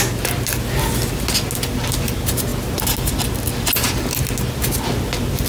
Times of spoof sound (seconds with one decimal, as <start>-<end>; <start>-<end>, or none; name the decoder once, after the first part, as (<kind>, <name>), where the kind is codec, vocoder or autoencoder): none